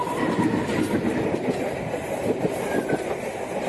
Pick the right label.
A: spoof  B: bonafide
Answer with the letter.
A